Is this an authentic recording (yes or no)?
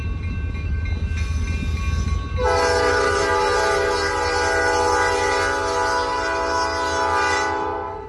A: yes